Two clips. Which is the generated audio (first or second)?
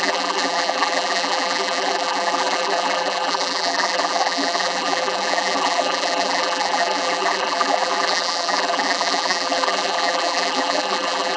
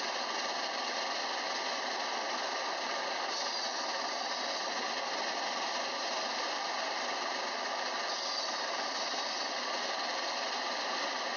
first